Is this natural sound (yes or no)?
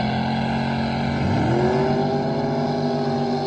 yes